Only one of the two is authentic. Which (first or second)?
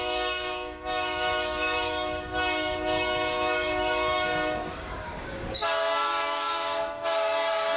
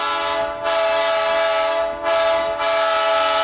second